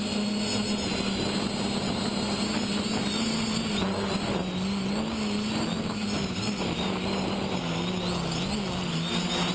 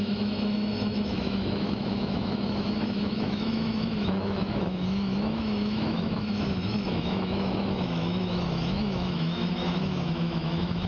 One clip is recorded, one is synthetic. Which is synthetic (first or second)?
second